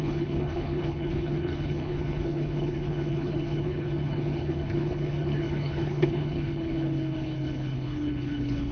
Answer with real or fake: fake